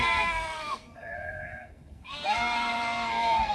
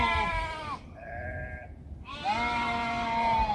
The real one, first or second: second